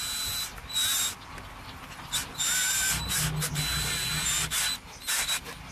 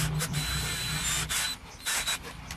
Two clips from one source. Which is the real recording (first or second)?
first